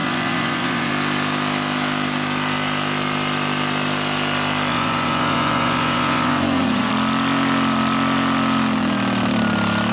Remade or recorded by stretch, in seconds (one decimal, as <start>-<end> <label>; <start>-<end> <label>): 0.0-0.9 remade; 0.9-4.7 recorded; 4.7-6.9 remade; 6.9-9.9 recorded